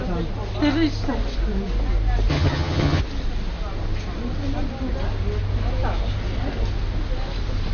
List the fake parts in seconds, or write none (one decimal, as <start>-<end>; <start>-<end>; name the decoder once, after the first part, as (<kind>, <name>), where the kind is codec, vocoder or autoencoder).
2.3-3.0 (vocoder, HiFi-GAN)